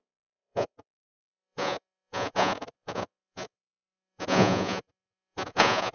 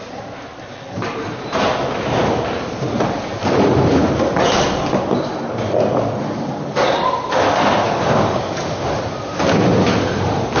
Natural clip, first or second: second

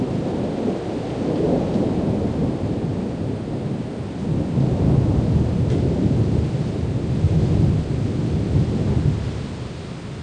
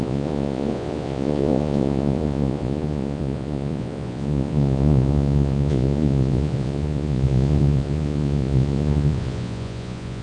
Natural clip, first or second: first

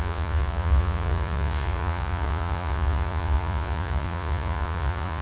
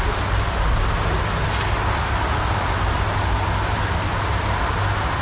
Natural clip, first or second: second